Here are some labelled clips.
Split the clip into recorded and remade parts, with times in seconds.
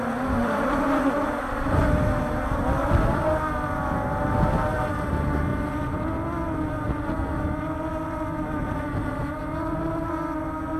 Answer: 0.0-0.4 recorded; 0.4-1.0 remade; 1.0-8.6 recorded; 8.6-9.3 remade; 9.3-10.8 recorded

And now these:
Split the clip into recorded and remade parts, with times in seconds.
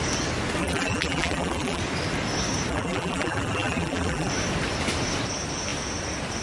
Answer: 0.0-0.6 recorded; 0.6-1.8 remade; 1.8-2.7 recorded; 2.7-4.3 remade; 4.3-6.4 recorded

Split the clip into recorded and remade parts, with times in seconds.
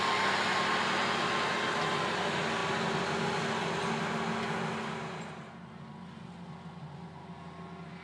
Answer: 0.0-8.0 recorded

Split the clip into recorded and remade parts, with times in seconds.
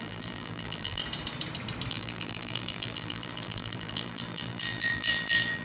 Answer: 0.0-1.0 remade; 1.0-1.9 recorded; 1.9-5.6 remade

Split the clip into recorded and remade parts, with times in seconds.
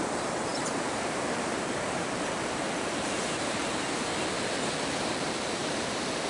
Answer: 0.0-3.6 remade; 3.6-5.1 recorded; 5.1-6.3 remade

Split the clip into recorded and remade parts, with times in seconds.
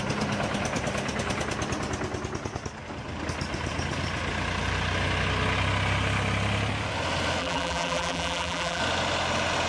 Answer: 0.0-7.4 recorded; 7.4-8.8 remade; 8.8-9.7 recorded